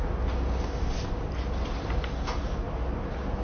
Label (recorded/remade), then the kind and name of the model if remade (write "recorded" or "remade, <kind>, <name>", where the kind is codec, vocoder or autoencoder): recorded